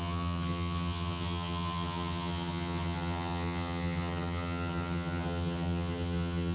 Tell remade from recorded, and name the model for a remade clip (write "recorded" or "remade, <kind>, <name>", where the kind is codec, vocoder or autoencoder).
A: remade, vocoder, HiFi-GAN